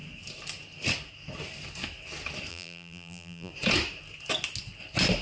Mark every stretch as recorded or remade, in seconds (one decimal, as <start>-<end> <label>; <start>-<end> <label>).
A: 0.0-2.5 recorded; 2.5-3.5 remade; 3.5-5.2 recorded